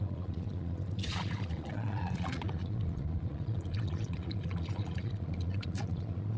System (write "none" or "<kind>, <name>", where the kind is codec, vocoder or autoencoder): vocoder, Vocos